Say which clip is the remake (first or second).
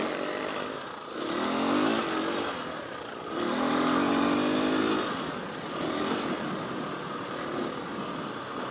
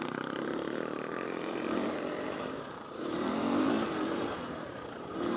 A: second